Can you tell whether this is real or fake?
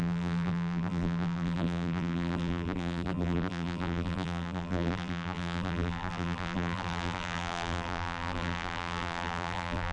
fake